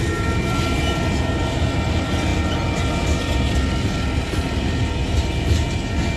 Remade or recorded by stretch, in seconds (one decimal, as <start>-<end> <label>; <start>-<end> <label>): 0.0-6.2 recorded